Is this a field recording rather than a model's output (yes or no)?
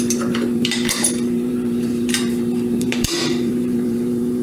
no